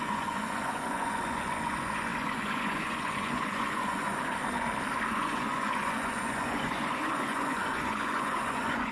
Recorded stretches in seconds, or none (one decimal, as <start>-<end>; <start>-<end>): 4.4-5.1